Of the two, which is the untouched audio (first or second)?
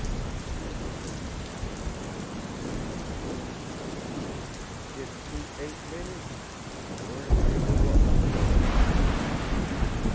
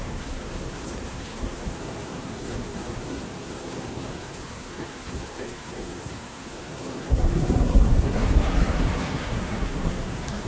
first